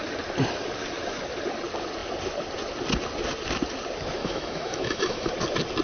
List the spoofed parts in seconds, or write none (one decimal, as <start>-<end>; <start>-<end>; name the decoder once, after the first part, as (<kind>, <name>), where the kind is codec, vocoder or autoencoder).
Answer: 4.2-5.3 (autoencoder, DAC-VAE)